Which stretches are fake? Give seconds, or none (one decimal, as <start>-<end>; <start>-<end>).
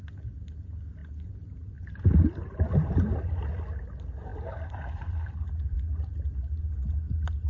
4.3-5.3